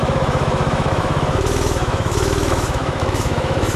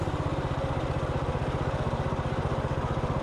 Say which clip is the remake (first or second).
first